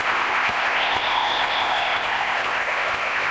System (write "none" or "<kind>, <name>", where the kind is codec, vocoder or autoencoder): codec, ZipCodec